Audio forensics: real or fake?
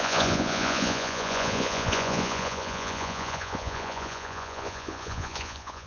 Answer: fake